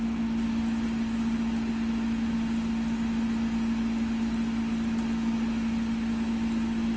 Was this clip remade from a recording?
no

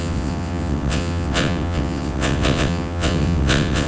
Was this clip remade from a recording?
yes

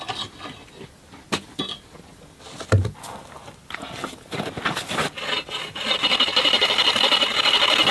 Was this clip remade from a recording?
no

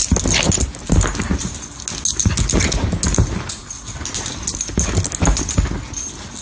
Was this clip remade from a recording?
no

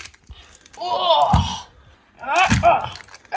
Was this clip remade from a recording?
no